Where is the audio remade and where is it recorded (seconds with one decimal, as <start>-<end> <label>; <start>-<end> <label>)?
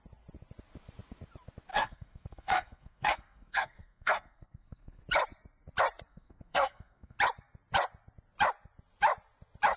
0.0-1.7 recorded; 1.7-5.0 remade; 5.0-6.1 recorded; 6.1-7.2 remade; 7.2-9.8 recorded